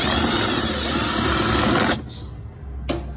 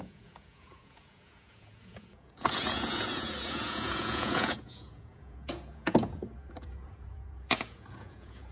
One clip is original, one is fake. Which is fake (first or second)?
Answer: second